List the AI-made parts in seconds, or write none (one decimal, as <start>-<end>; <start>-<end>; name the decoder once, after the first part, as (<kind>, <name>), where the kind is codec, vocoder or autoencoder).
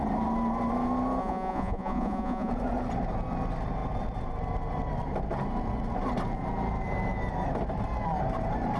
1.2-2.5 (vocoder, Vocos)